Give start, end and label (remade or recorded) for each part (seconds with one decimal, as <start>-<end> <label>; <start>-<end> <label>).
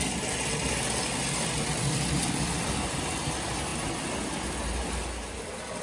0.0-5.8 recorded